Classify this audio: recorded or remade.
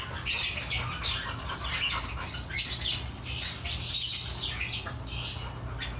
recorded